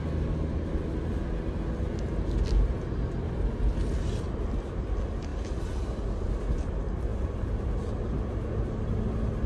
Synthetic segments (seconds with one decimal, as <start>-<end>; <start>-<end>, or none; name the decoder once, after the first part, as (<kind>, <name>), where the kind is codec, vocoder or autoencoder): none